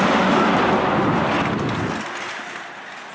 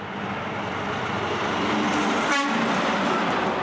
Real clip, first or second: first